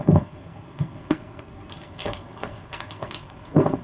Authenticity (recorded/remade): remade